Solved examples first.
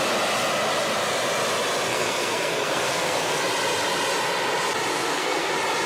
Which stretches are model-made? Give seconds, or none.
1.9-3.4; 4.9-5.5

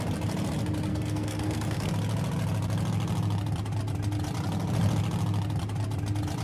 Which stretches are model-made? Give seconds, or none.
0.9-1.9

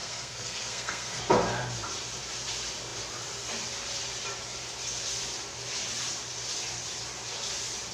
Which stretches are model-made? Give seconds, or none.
0.0-1.2